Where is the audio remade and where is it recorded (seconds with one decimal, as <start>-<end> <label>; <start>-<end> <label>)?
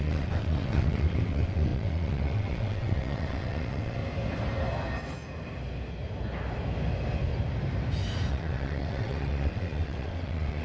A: 0.0-4.0 remade; 4.0-8.3 recorded; 8.3-10.6 remade